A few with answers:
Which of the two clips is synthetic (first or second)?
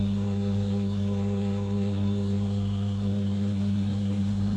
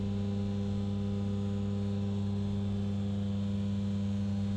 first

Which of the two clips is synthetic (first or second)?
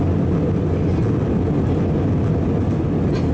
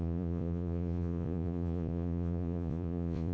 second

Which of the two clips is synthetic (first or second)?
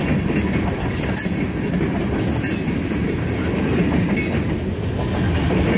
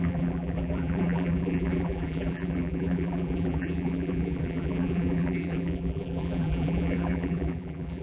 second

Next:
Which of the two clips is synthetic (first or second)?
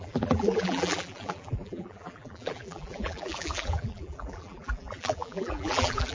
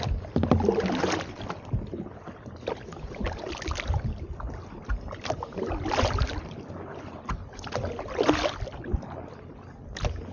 first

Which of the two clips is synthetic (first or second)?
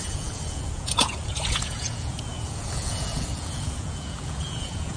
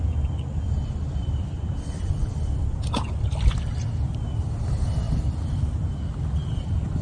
first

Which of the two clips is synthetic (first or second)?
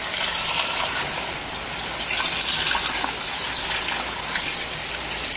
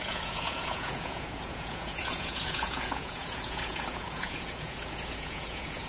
second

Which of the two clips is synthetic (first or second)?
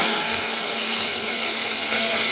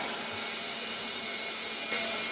first